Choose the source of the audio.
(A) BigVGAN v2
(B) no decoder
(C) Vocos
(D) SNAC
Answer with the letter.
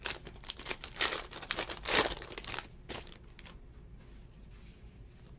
B